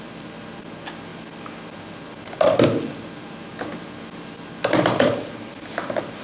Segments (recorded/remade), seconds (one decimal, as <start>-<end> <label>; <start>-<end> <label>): 0.0-6.2 recorded